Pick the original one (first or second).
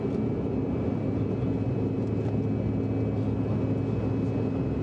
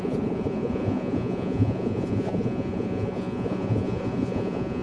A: first